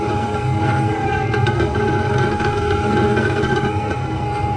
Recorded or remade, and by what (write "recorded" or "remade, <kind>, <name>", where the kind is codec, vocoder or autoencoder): remade, codec, SNAC